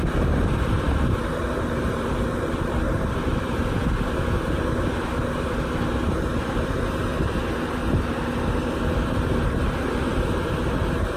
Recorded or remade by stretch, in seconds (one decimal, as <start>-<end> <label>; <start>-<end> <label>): 0.0-3.6 remade; 3.6-7.0 recorded; 7.0-7.8 remade; 7.8-8.8 recorded; 8.8-11.2 remade